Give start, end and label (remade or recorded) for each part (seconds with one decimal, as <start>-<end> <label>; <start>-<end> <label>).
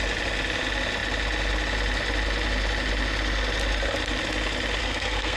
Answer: 0.0-4.8 recorded; 4.8-5.4 remade